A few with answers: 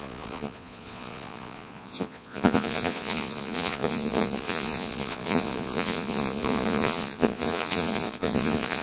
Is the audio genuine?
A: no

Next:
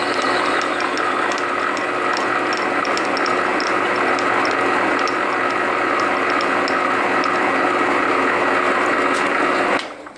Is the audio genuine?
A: yes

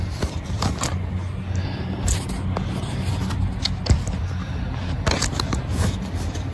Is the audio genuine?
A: yes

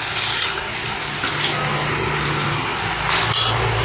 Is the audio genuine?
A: yes